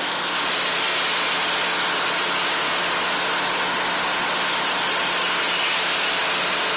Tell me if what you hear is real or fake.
real